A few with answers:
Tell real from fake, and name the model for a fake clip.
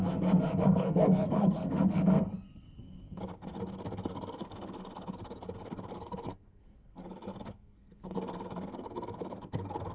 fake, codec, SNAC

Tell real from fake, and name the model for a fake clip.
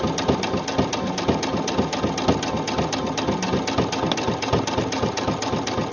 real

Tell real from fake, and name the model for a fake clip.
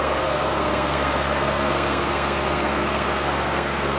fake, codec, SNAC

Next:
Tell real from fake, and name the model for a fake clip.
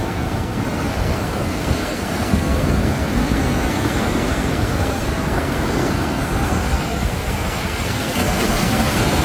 fake, codec, SNAC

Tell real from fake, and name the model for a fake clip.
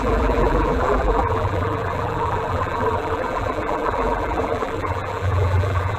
fake, vocoder, BigVGAN v2